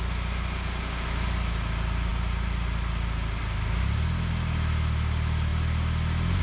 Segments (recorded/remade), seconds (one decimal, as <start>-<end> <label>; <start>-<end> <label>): 0.0-6.4 recorded